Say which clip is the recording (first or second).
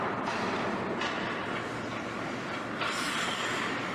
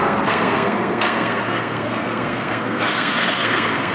first